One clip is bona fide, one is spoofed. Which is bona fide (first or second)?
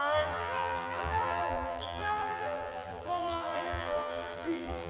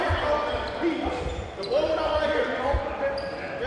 second